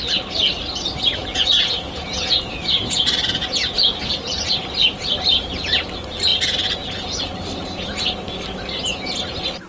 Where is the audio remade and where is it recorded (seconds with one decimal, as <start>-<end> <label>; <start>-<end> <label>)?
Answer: 0.0-1.2 recorded; 1.2-4.7 remade; 4.7-6.3 recorded; 6.3-7.2 remade; 7.2-9.7 recorded